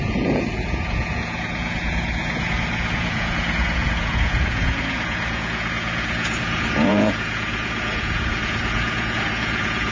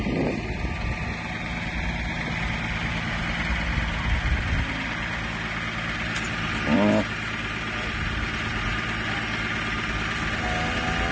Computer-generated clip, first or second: first